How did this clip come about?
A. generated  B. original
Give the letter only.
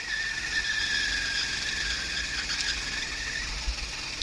B